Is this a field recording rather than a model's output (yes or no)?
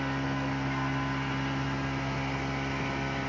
yes